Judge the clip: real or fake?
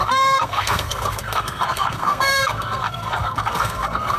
fake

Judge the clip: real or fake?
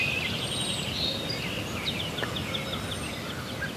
real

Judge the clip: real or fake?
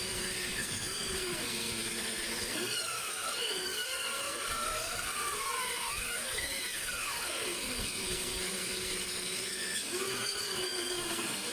fake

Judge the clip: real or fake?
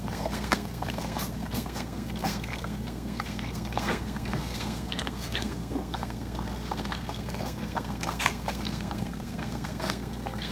fake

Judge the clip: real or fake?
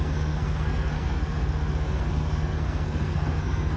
fake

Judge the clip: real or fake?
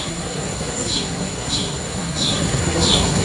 fake